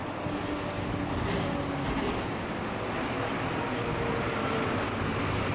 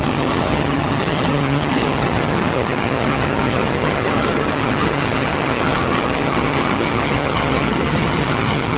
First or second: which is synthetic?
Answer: second